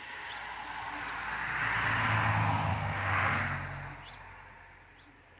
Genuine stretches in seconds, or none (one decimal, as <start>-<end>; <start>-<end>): 0.0-2.7; 3.4-5.4